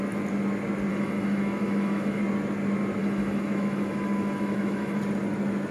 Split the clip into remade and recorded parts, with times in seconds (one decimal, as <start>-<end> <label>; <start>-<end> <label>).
0.0-0.9 recorded; 0.9-2.2 remade; 2.2-3.0 recorded; 3.0-5.0 remade; 5.0-5.7 recorded